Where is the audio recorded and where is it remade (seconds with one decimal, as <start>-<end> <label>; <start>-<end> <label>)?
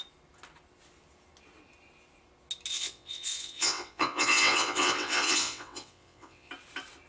0.0-2.7 recorded; 2.7-6.5 remade; 6.5-7.1 recorded